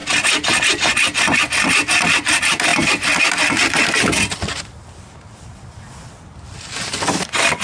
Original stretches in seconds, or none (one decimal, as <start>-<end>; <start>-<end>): 0.0-7.6